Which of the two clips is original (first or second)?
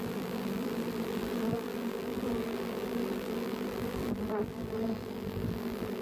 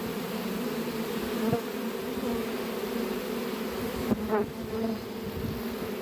second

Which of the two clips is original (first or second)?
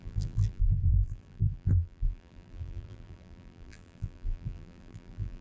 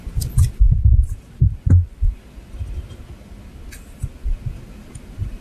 second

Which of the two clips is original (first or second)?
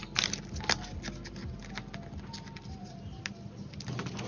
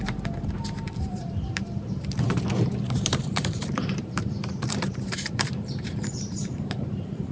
first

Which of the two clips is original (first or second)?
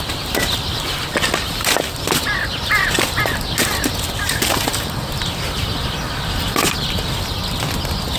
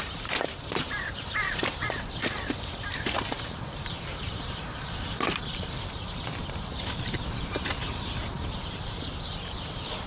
first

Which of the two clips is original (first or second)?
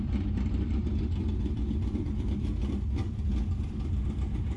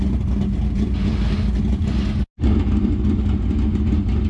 second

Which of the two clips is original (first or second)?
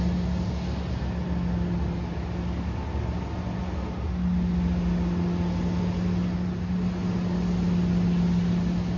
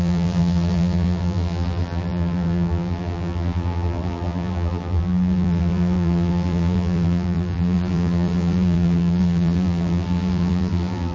first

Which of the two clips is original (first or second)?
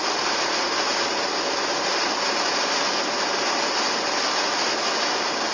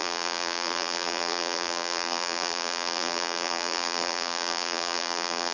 first